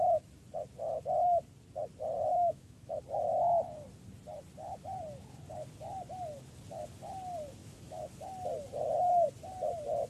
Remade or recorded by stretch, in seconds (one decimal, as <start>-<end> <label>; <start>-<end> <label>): 0.0-2.3 recorded; 2.3-3.0 remade; 3.0-7.6 recorded; 7.6-8.1 remade; 8.1-10.1 recorded